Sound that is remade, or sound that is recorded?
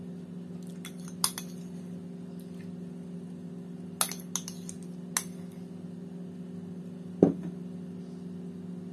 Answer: recorded